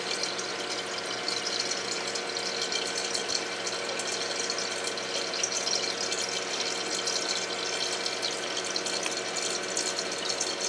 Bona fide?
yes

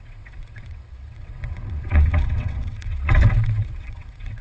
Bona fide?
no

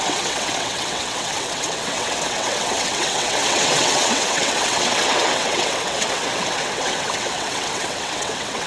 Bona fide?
no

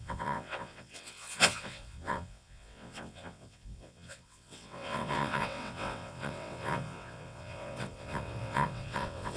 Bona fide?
no